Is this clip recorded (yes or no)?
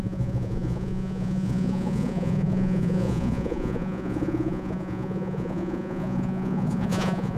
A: no